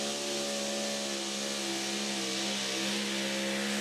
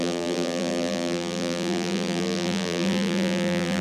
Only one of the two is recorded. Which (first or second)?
first